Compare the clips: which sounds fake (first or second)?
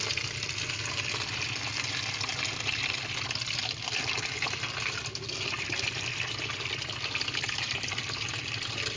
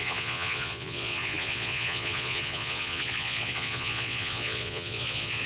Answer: second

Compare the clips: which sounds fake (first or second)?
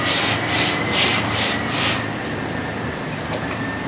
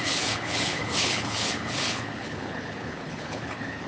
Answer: second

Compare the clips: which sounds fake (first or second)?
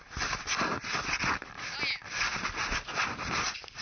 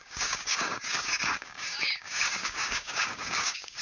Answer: second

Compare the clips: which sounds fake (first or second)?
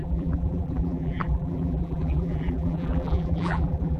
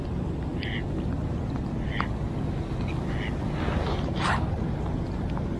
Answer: first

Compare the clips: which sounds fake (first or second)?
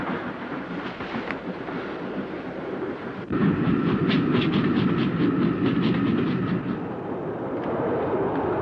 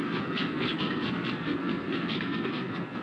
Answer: second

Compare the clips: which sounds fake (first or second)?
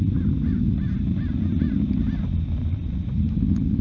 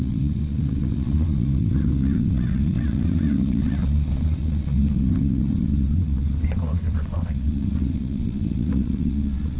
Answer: second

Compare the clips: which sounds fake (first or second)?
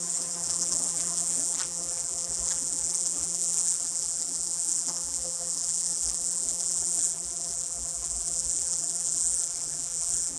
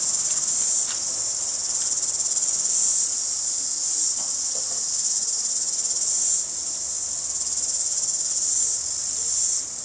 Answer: first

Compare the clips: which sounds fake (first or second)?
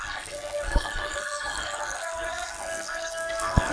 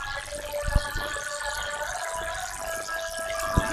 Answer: first